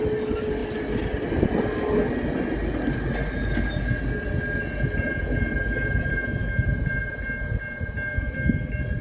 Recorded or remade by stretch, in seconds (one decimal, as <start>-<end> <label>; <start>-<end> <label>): 0.0-9.0 recorded